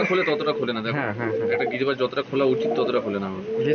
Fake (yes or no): no